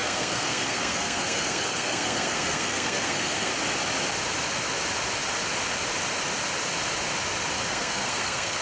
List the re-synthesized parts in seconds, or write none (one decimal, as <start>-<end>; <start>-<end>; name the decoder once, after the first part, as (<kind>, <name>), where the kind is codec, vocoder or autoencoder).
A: 0.0-3.5 (codec, SNAC); 7.7-8.6